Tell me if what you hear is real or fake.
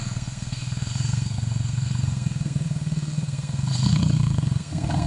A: fake